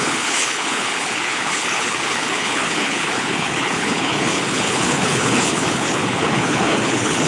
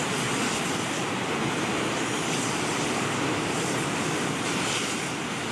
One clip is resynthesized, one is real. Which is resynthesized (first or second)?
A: first